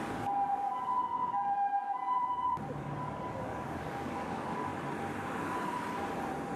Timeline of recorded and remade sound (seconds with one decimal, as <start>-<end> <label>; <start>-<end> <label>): 0.0-2.0 remade; 2.0-2.8 recorded; 2.8-4.7 remade; 4.7-6.6 recorded